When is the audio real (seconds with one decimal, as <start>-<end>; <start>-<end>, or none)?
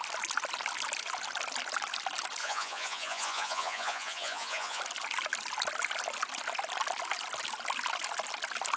0.0-2.4; 4.8-8.8